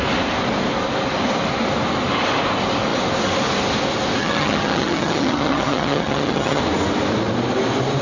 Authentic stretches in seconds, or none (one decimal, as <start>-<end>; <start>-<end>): 0.0-4.2; 6.6-8.0

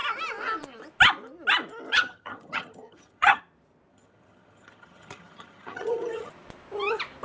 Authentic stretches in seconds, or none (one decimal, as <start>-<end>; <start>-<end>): 0.0-1.9; 3.4-3.9; 6.3-7.2

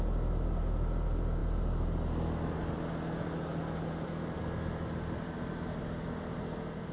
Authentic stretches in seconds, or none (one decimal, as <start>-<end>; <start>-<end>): 0.0-6.9

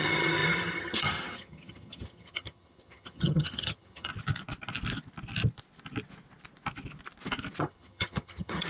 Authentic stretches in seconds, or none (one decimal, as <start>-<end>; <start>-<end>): 4.1-7.6

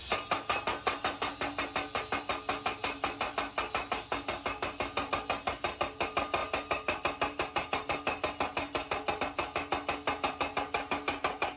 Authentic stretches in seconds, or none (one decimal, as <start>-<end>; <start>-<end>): 0.0-11.6

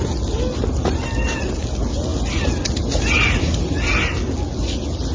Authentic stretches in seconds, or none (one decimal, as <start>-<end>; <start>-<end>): 0.0-5.1

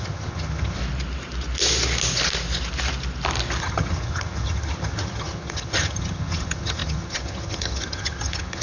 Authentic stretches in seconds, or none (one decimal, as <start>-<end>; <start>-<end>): 0.8-3.6